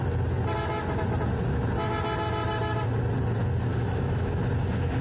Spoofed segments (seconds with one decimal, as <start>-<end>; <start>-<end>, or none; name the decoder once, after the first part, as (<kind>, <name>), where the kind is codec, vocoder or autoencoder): 3.7-4.3 (autoencoder, DAC-VAE)